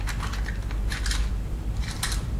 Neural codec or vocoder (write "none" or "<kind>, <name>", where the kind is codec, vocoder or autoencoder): none